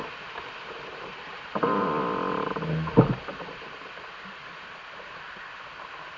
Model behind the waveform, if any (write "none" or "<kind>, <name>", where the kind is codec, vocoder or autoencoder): none